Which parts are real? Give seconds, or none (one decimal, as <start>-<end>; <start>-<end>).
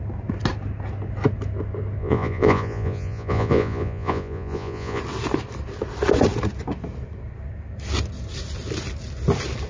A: 0.0-2.0; 5.0-9.7